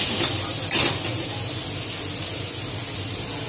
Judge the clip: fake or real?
real